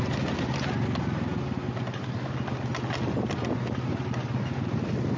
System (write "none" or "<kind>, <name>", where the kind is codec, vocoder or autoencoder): none